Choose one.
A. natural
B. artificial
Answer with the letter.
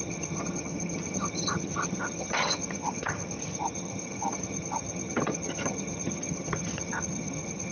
B